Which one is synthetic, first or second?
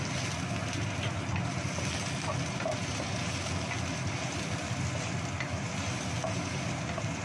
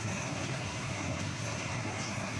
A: second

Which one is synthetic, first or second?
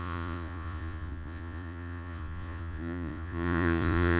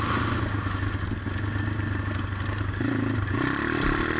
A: first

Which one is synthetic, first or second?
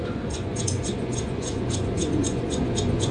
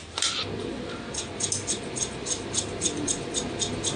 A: first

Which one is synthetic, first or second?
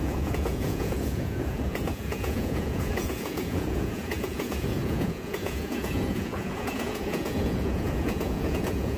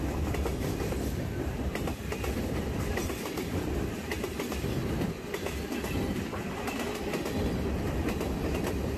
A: first